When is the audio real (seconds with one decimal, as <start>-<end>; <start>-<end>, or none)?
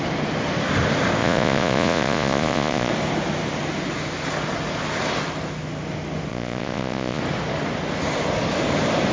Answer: 0.0-1.2; 2.9-6.3; 7.2-9.1